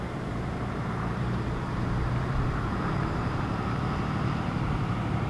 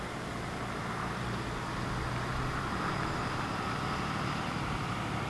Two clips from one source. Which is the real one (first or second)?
second